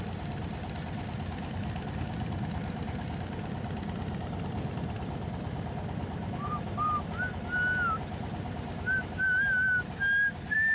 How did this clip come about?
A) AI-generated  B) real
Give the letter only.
B